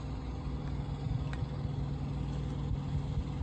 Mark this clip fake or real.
real